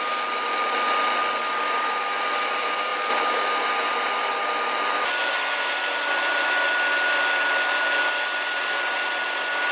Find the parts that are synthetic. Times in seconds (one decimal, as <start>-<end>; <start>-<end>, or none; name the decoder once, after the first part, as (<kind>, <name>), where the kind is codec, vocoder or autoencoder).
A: none